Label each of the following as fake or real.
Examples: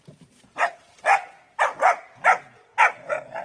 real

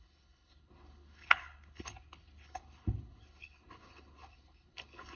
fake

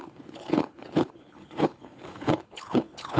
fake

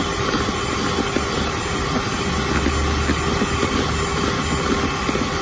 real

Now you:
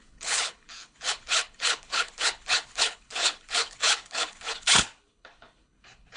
fake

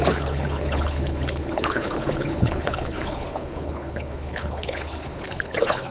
fake